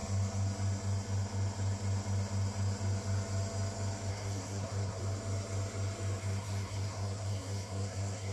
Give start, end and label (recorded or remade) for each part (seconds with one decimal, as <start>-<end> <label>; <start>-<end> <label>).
0.0-4.1 recorded; 4.1-5.0 remade; 5.0-6.2 recorded; 6.2-8.3 remade